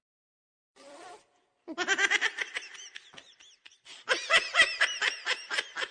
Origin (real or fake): fake